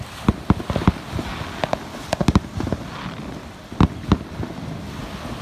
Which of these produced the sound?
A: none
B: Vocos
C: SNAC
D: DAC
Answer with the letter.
A